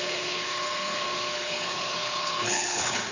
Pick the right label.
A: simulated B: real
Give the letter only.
A